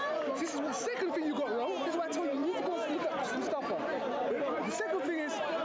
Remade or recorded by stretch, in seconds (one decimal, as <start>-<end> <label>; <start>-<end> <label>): 0.0-5.6 recorded